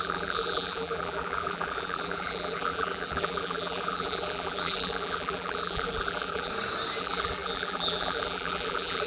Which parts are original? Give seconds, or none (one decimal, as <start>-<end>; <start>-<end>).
6.5-7.0